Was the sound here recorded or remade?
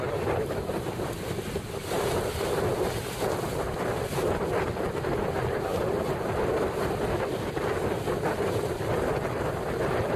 recorded